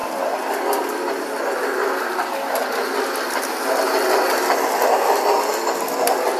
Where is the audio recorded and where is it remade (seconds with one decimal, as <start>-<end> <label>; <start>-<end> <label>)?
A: 0.0-6.4 recorded